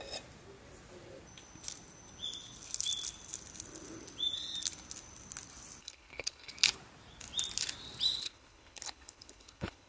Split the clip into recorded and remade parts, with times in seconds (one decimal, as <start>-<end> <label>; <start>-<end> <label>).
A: 0.0-5.8 recorded; 5.8-6.5 remade; 6.5-8.2 recorded; 8.2-9.9 remade